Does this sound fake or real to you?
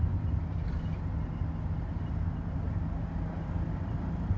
real